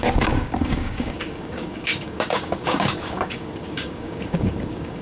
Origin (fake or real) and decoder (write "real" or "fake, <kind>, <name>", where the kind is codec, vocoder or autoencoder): fake, codec, DAC